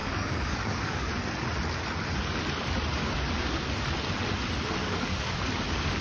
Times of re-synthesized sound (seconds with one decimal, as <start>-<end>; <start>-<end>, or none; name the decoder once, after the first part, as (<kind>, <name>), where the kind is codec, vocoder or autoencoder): 0.0-1.1 (codec, DAC); 4.8-5.4

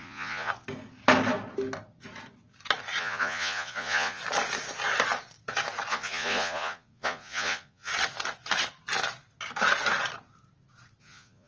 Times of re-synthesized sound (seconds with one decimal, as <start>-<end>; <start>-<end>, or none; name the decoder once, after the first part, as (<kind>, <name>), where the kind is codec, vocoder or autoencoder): 0.0-0.5 (vocoder, Vocos); 3.0-4.2; 5.9-7.9; 11.0-11.5

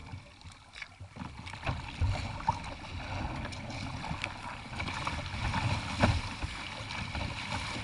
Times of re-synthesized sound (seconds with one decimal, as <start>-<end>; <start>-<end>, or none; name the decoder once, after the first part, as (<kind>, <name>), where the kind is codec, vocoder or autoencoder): none

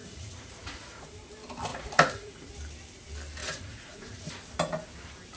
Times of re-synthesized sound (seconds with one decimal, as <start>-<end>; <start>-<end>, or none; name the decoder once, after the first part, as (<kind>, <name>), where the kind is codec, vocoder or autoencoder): 0.0-1.1 (vocoder, Vocos); 1.7-2.5; 3.4-4.3

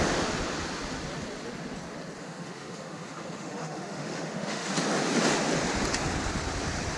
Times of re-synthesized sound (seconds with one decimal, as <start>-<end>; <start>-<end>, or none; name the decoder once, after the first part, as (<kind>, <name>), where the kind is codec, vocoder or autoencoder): 2.2-4.7 (autoencoder, DAC-VAE)

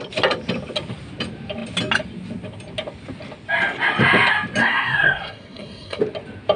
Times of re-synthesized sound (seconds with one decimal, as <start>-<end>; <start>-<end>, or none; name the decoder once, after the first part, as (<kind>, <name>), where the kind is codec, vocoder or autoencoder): 4.6-6.0 (codec, SNAC)

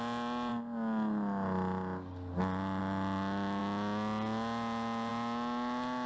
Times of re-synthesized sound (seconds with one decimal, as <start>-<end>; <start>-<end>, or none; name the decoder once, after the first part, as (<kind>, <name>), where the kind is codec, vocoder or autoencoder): none